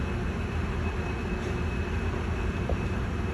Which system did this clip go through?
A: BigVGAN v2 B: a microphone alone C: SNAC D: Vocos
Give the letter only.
B